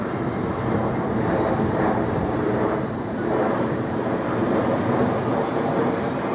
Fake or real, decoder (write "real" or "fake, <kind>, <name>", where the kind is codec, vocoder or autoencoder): fake, vocoder, BigVGAN v2